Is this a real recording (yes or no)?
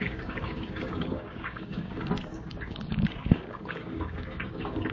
no